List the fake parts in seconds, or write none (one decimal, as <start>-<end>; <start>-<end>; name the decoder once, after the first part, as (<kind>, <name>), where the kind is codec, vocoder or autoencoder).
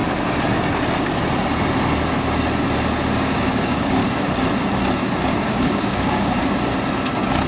3.2-4.0 (codec, DAC); 5.4-6.4